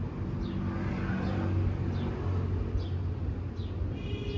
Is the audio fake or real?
real